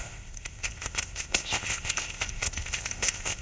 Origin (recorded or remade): remade